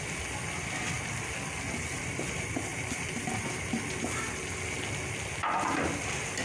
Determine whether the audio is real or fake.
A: real